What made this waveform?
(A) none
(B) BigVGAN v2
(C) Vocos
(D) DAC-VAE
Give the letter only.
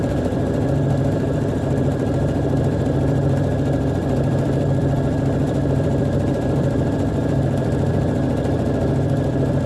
B